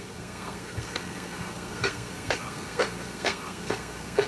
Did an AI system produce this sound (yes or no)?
yes